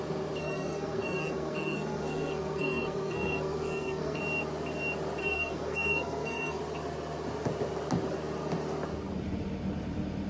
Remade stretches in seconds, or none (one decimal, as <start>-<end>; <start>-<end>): 0.4-4.2; 5.2-6.6